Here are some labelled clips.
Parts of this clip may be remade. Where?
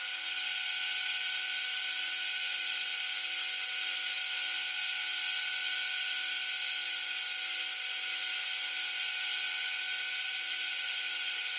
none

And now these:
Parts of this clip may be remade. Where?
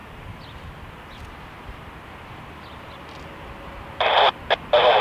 none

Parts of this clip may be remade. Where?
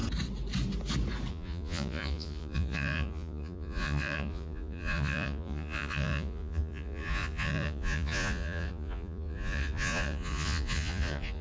1.3-11.4 (vocoder, Vocos)